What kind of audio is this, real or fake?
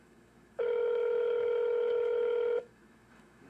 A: fake